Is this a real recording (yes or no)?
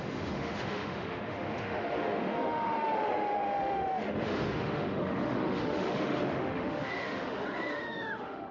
no